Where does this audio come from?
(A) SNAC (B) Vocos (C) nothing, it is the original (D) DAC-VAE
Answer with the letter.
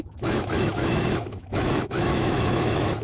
D